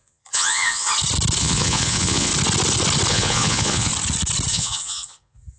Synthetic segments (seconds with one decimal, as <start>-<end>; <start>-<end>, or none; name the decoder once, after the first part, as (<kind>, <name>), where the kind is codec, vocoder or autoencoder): 0.0-0.9 (vocoder, Vocos); 1.4-2.3; 3.1-3.9; 4.5-5.6